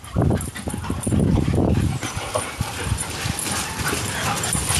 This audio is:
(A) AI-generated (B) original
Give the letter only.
A